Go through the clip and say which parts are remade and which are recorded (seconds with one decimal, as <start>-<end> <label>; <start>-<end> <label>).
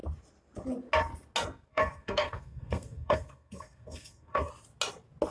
0.0-1.7 recorded; 1.7-4.5 remade; 4.5-5.3 recorded